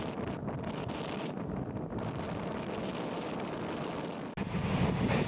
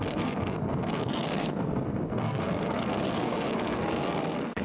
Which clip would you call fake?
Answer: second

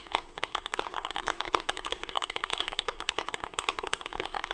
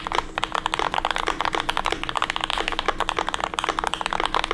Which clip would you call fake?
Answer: first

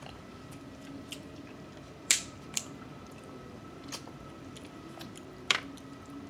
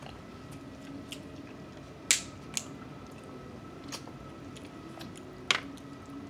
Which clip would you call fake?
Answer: first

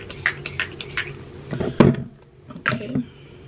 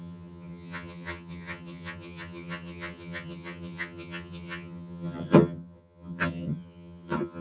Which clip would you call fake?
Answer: second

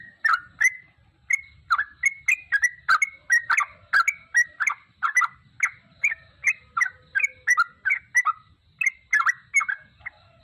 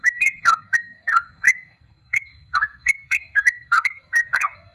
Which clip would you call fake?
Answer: second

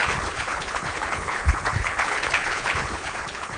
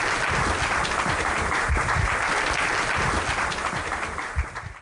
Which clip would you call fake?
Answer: first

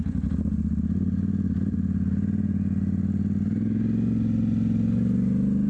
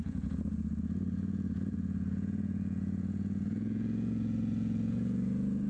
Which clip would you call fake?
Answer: second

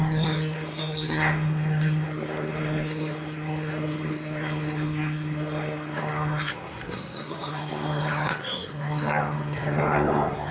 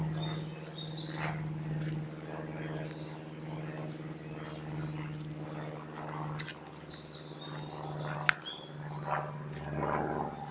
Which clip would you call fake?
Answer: first